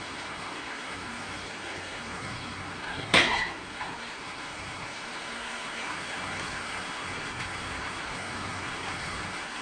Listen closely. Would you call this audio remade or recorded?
remade